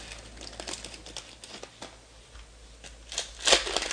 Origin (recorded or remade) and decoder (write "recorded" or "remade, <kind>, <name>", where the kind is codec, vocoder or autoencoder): recorded